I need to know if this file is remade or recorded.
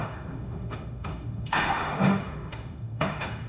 remade